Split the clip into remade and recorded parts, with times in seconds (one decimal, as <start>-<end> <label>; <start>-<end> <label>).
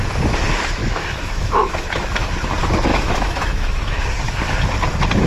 0.0-0.8 recorded; 0.8-2.3 remade; 2.3-2.9 recorded; 2.9-4.0 remade; 4.0-5.3 recorded